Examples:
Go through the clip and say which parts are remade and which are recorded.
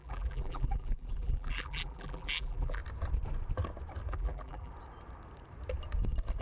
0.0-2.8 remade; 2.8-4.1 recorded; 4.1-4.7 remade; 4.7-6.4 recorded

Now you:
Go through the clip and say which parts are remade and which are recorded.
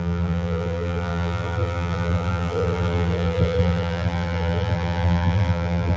0.0-6.0 remade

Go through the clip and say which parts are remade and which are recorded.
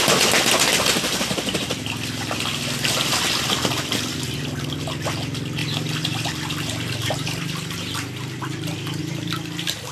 0.0-5.6 recorded; 5.6-9.0 remade; 9.0-9.9 recorded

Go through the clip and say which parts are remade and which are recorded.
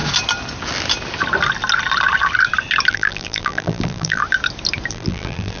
0.0-2.9 recorded; 2.9-4.2 remade; 4.2-4.9 recorded; 4.9-5.6 remade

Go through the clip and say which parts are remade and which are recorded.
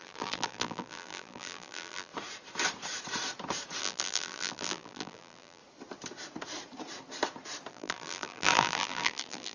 0.0-2.1 remade; 2.1-3.8 recorded; 3.8-5.6 remade; 5.6-7.7 recorded; 7.7-9.5 remade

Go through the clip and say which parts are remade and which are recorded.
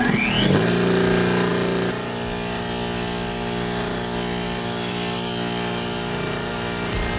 0.0-7.2 recorded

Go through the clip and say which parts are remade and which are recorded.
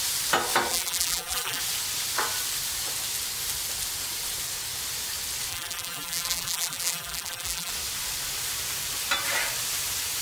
0.0-0.7 recorded; 0.7-1.6 remade; 1.6-5.5 recorded; 5.5-7.7 remade; 7.7-10.2 recorded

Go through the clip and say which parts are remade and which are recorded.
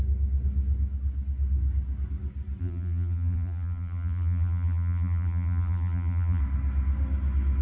0.0-2.6 recorded; 2.6-6.4 remade; 6.4-7.6 recorded